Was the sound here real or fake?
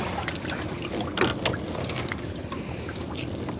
real